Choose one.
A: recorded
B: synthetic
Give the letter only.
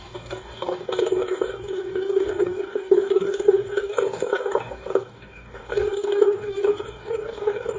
B